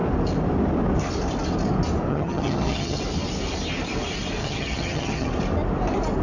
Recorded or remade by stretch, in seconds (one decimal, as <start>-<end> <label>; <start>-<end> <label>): 0.0-2.1 recorded; 2.1-3.0 remade; 3.0-4.4 recorded; 4.4-5.3 remade; 5.3-6.2 recorded